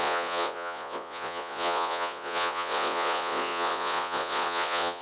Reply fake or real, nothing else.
fake